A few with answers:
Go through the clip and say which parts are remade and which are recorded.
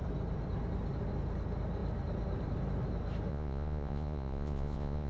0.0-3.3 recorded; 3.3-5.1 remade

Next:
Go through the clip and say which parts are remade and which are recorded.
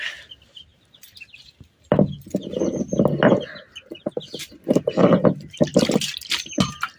0.0-7.0 recorded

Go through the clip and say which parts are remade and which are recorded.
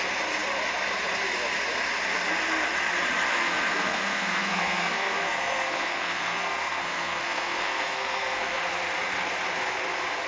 0.0-3.3 recorded; 3.3-8.6 remade; 8.6-10.3 recorded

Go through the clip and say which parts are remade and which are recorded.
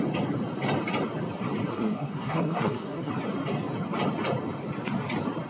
0.0-1.7 recorded; 1.7-3.1 remade; 3.1-5.5 recorded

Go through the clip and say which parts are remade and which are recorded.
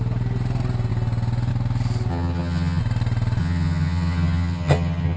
0.0-2.1 recorded; 2.1-2.8 remade; 2.8-3.4 recorded; 3.4-5.2 remade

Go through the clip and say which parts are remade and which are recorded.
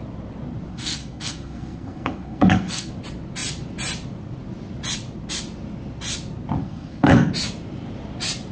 0.0-0.7 recorded; 0.7-2.9 remade; 2.9-6.6 recorded; 6.6-7.3 remade; 7.3-8.5 recorded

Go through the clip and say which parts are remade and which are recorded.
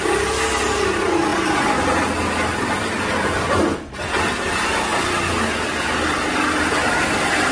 0.0-7.5 recorded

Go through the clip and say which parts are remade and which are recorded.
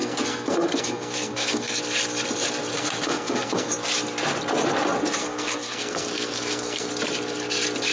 0.0-1.8 remade; 1.8-2.7 recorded; 2.7-3.7 remade; 3.7-5.2 recorded; 5.2-6.9 remade; 6.9-7.9 recorded